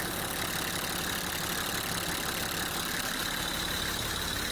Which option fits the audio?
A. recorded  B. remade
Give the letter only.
A